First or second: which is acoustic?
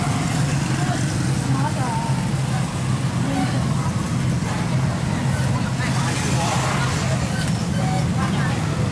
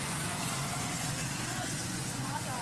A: first